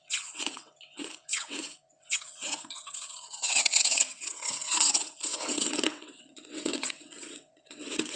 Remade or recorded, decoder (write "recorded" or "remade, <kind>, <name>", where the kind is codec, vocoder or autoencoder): remade, vocoder, WaveNeXt